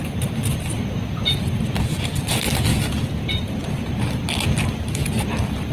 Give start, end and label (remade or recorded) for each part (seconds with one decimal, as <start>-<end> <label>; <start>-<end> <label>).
0.0-5.7 recorded